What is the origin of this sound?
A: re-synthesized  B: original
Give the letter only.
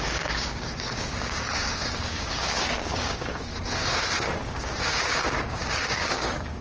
A